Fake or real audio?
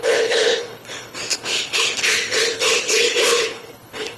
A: fake